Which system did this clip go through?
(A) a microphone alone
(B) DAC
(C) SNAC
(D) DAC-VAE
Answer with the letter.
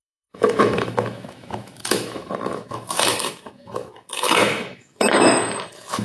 D